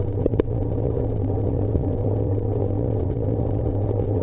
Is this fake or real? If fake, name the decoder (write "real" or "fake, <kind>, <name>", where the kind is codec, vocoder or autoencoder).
fake, vocoder, WaveNeXt